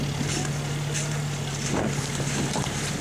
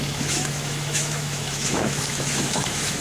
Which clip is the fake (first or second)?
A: second